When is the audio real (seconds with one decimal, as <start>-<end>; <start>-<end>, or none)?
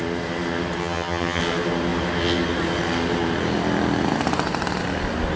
0.0-0.8; 1.4-5.4